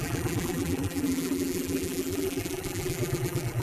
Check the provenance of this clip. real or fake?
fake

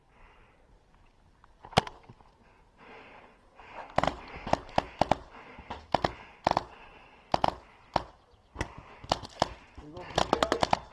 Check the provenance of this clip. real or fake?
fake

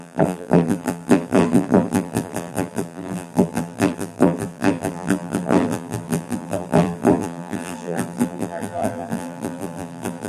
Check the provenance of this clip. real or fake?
fake